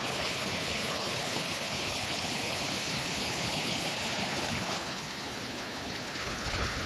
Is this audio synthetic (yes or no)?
yes